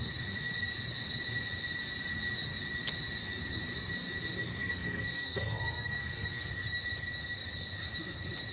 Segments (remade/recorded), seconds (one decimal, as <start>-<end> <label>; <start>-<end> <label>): 0.0-4.6 recorded; 4.6-6.5 remade; 6.5-8.5 recorded